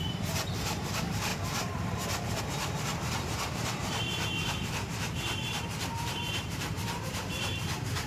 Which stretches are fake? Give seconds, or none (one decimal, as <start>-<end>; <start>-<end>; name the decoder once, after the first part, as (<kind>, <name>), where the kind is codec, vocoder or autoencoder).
0.0-1.3 (vocoder, BigVGAN v2); 2.4-8.1